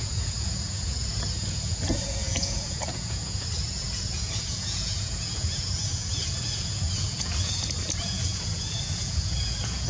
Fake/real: fake